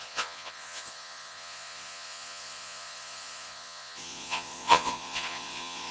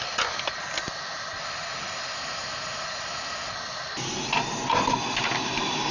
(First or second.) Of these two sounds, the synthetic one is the first